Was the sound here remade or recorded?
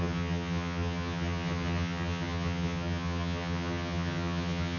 remade